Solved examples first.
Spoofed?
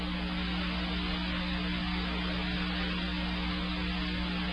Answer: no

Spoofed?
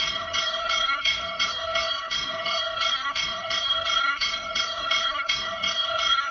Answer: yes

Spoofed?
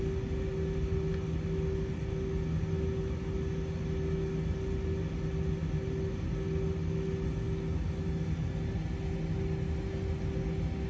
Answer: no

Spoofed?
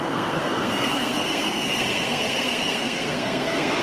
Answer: yes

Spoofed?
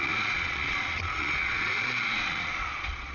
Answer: yes